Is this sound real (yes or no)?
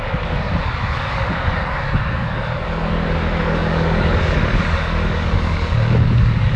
no